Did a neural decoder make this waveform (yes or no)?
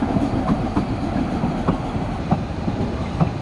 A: no